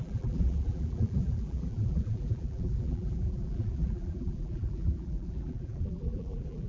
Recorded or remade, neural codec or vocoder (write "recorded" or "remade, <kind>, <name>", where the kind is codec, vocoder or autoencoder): remade, vocoder, BigVGAN v2